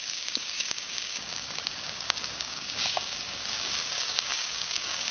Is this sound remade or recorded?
remade